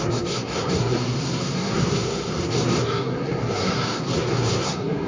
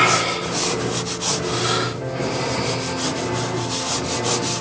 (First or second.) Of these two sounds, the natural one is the second